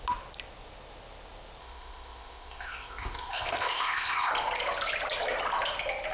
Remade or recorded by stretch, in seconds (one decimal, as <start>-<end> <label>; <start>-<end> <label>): 0.0-1.6 recorded; 1.6-4.3 remade; 4.3-6.1 recorded